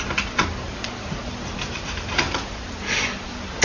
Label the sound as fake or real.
real